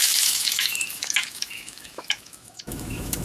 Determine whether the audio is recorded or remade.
remade